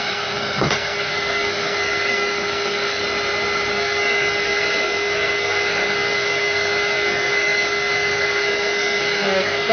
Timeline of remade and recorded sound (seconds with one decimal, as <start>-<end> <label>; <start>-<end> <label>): 0.0-3.0 remade; 3.0-3.7 recorded; 3.7-9.7 remade